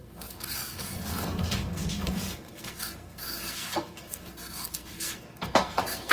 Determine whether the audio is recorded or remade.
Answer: remade